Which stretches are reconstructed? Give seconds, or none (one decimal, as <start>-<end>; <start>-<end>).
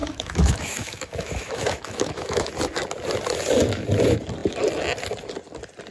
0.0-2.5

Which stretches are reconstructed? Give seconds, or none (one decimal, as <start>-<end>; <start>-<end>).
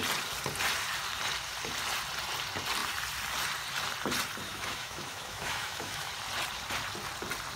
4.5-6.1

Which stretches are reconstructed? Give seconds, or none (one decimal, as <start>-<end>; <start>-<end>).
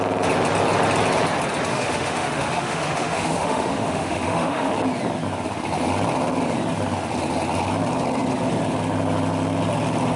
1.7-4.7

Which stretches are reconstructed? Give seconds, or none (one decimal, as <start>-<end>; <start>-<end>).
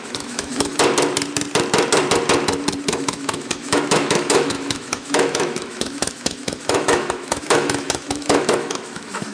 0.0-0.7; 2.9-9.3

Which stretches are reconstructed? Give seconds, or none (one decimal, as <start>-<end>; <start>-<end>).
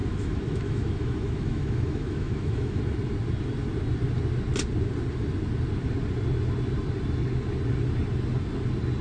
0.0-2.8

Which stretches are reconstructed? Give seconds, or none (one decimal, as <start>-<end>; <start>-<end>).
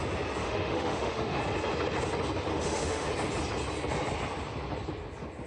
0.4-1.4; 2.5-3.1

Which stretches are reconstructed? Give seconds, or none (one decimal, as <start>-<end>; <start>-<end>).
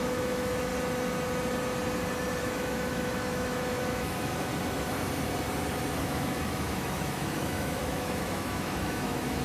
0.0-0.7; 2.4-4.5; 6.0-9.4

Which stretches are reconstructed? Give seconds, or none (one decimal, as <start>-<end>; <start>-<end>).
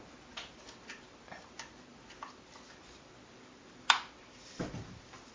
none